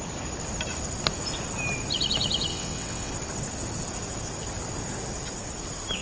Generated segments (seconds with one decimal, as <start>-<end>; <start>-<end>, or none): 2.5-3.1